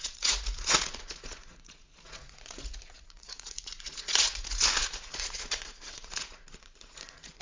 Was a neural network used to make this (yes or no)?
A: yes